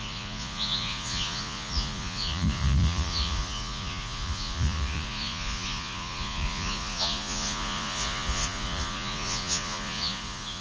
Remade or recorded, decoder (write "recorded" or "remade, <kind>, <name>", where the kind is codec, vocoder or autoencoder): remade, vocoder, Vocos